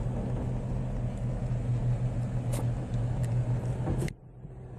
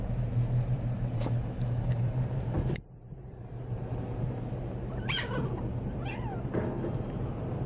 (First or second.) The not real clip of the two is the second